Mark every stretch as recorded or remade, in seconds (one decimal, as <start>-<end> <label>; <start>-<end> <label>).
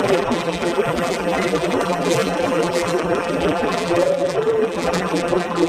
0.0-5.7 remade